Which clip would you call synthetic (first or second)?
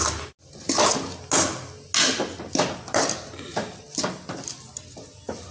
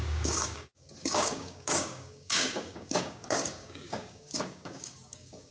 second